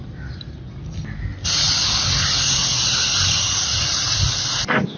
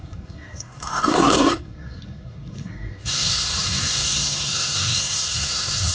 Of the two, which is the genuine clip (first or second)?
first